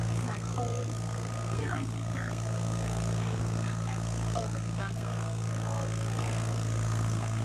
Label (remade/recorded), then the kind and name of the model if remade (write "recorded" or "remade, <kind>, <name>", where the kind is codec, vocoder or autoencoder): remade, codec, SNAC